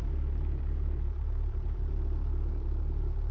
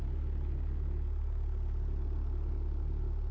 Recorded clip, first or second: second